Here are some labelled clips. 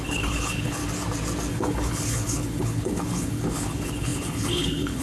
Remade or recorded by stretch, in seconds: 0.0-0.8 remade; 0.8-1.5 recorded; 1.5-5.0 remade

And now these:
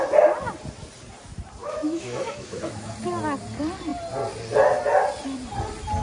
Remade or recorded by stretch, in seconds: 0.0-1.6 recorded; 1.6-2.9 remade; 2.9-6.0 recorded

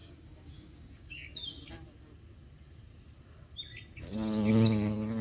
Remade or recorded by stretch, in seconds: 0.0-1.3 remade; 1.3-5.2 recorded

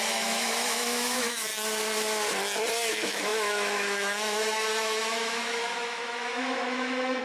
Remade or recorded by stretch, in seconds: 0.0-1.5 remade; 1.5-2.9 recorded; 2.9-7.2 remade

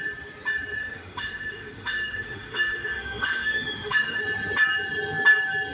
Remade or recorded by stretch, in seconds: 0.0-0.8 recorded; 0.8-4.2 remade; 4.2-5.7 recorded

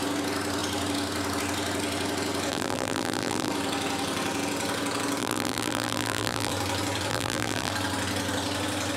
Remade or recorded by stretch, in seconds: 0.0-2.5 recorded; 2.5-3.5 remade; 3.5-5.2 recorded; 5.2-6.5 remade; 6.5-7.1 recorded; 7.1-7.7 remade; 7.7-9.0 recorded

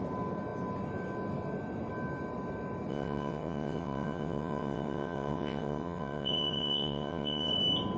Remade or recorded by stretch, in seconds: 0.0-2.9 recorded; 2.9-7.5 remade; 7.5-8.0 recorded

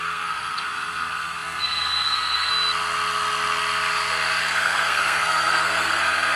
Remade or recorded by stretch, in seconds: 0.0-2.5 remade; 2.5-4.4 recorded; 4.4-6.4 remade